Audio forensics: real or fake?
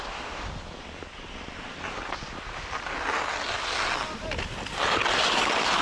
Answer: real